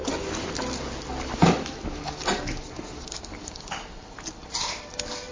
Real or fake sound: real